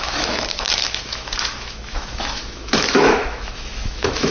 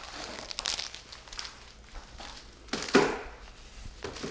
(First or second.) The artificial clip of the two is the first